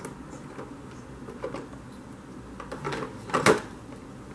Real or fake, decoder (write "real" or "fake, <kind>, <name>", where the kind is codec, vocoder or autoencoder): real